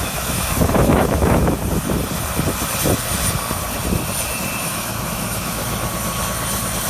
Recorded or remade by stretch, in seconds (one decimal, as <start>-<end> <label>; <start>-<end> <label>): 0.0-1.6 remade; 1.6-4.6 recorded; 4.6-5.6 remade; 5.6-6.9 recorded